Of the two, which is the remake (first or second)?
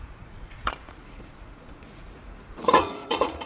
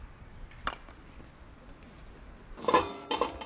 first